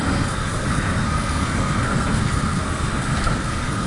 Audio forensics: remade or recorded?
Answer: remade